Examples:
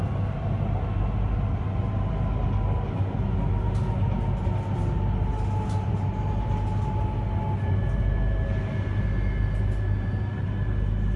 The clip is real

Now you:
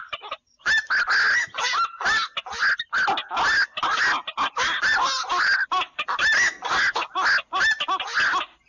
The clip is real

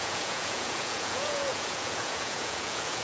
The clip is fake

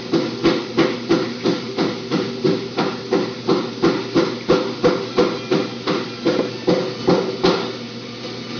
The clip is real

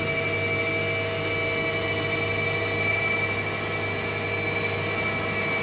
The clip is real